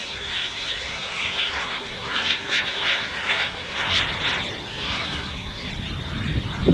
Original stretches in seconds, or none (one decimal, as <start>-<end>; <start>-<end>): 4.0-4.7; 5.7-6.7